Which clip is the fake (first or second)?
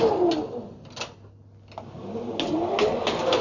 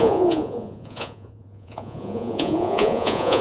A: second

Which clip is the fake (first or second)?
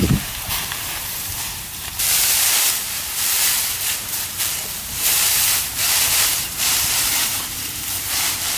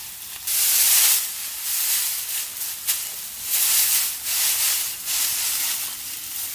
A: first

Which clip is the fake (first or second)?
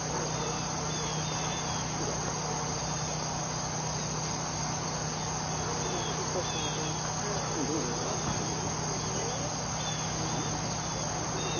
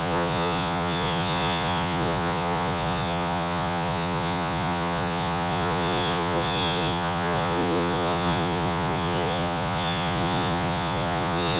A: second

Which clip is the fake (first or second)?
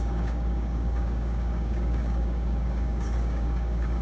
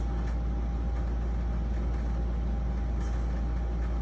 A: first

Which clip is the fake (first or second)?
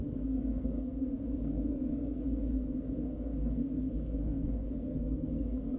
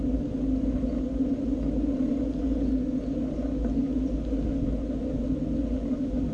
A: first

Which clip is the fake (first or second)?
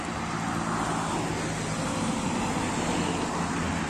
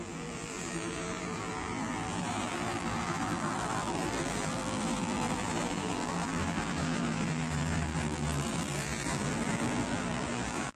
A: second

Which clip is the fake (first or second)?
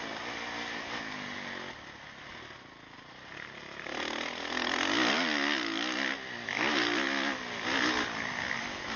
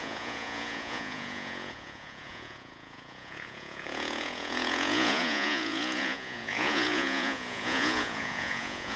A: second